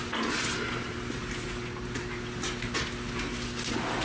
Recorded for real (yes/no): yes